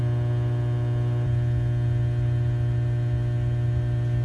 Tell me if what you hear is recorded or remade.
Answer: recorded